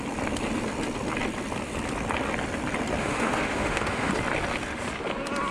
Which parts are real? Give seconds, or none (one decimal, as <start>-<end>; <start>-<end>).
0.0-3.0; 4.1-5.5